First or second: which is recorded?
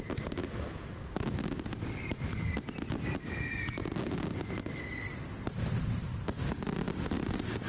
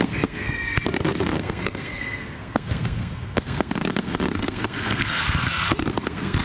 first